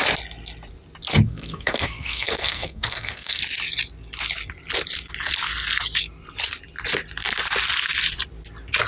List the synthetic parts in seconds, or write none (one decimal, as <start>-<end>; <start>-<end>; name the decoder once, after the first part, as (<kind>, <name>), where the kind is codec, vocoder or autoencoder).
1.1-3.4 (codec, SNAC)